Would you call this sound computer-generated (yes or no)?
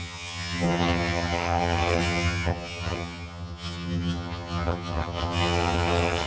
yes